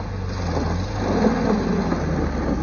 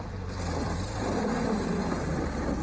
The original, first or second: first